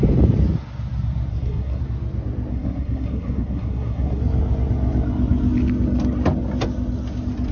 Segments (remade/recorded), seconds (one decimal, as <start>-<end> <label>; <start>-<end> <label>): 0.0-1.3 recorded; 1.3-1.8 remade; 1.8-2.5 recorded; 2.5-4.2 remade; 4.2-7.5 recorded